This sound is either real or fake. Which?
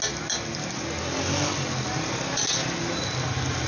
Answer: real